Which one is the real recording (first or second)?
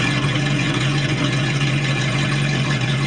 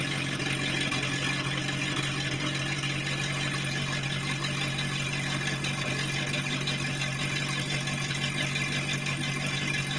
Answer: second